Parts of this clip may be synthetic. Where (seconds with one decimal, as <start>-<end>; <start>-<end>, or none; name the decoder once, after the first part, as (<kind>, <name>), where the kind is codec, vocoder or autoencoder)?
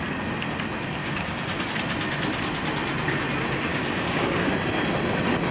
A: 1.0-1.7 (codec, DAC); 3.7-4.5